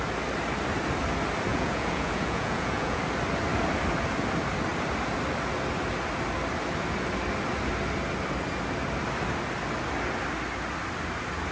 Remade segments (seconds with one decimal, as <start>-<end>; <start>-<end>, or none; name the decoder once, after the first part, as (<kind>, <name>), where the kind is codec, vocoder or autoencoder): 1.5-3.0 (vocoder, Vocos)